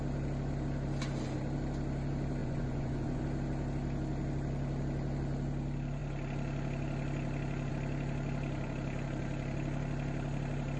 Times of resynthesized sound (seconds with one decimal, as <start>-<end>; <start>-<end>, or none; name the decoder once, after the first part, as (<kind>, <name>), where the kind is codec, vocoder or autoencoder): 2.4-3.2 (vocoder, Vocos)